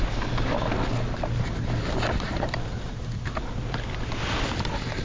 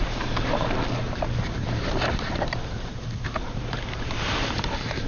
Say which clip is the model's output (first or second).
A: second